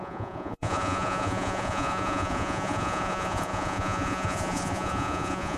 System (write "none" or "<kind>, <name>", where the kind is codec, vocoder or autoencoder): vocoder, Vocos